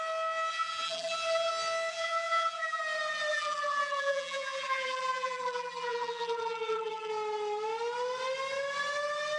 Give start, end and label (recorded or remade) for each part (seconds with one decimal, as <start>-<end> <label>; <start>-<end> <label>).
0.0-0.5 recorded; 0.5-1.5 remade; 1.5-1.9 recorded; 1.9-2.8 remade; 2.8-3.3 recorded; 3.3-7.1 remade; 7.1-9.4 recorded